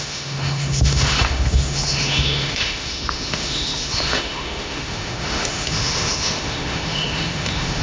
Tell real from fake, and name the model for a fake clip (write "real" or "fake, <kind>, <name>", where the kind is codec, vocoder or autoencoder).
fake, autoencoder, DAC-VAE